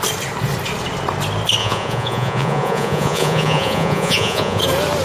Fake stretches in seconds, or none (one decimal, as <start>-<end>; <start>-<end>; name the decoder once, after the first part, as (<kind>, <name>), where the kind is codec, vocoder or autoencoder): 1.6-4.6 (vocoder, Vocos)